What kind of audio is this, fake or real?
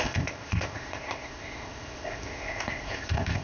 fake